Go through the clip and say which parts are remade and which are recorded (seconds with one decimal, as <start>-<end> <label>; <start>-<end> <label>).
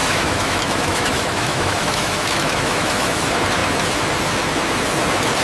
0.0-3.2 remade; 3.2-5.4 recorded